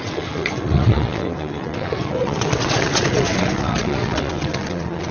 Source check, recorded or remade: remade